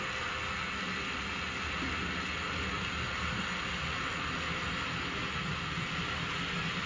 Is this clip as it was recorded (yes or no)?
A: yes